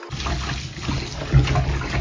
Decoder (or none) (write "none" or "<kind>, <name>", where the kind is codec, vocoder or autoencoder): none